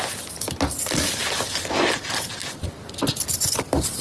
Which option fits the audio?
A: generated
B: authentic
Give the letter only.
B